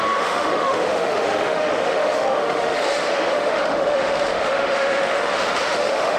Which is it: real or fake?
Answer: fake